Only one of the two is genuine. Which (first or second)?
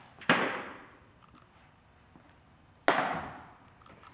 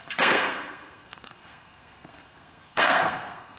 first